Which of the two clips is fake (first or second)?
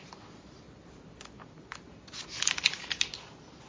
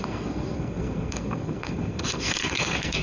second